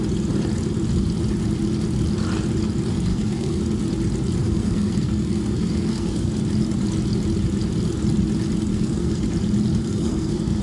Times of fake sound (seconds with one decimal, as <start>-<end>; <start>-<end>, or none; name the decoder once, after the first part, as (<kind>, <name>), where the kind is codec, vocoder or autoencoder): 3.1-3.6 (codec, SNAC); 4.4-6.3; 8.7-9.3; 9.8-10.6